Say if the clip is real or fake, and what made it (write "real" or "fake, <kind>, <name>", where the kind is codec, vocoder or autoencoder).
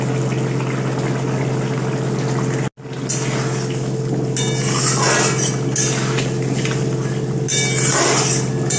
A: real